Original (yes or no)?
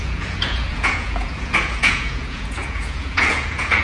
no